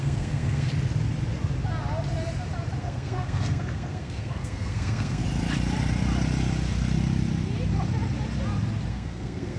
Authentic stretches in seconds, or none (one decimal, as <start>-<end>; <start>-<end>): 0.7-2.8; 5.2-8.9